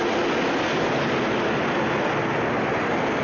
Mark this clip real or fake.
real